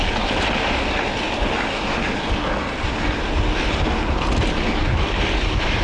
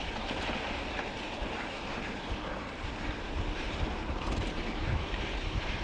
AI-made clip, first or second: second